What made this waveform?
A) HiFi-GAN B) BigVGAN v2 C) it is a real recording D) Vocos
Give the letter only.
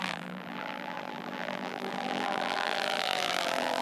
B